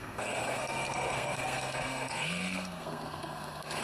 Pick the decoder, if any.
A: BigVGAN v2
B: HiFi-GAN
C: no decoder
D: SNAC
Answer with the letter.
D